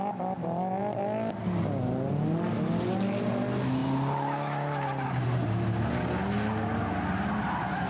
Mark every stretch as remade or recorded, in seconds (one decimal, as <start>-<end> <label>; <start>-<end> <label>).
0.0-7.9 recorded